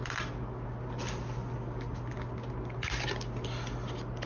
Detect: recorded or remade recorded